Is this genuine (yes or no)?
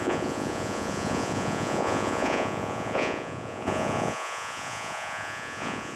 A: no